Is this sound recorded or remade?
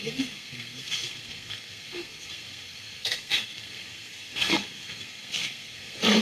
remade